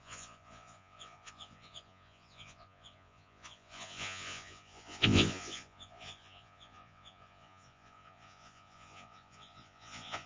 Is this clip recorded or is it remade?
remade